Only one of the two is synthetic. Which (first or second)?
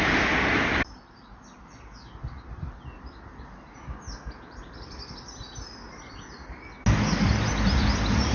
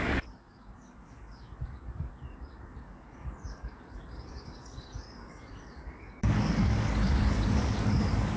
second